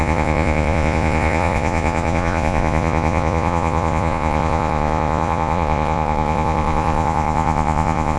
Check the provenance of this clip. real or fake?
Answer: fake